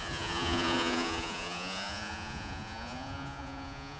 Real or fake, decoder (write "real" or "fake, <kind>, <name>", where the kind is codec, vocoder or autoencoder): fake, vocoder, Vocos